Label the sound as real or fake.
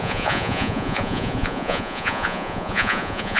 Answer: fake